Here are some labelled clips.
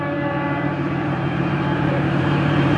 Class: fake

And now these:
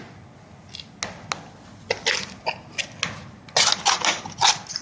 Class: real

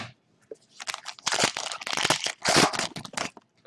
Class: real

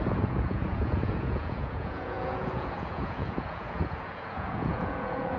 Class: fake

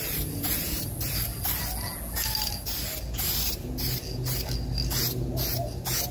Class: real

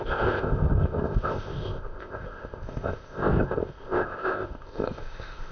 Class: fake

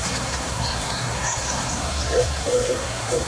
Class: fake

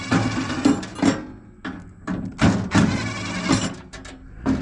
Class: real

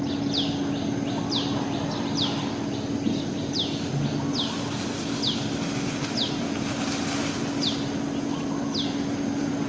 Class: real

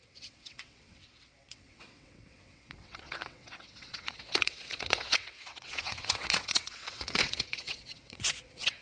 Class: fake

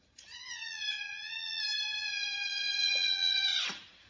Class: fake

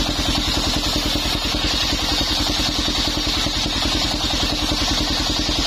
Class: real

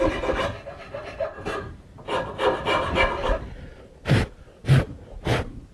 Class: real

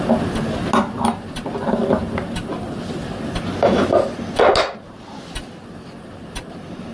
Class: real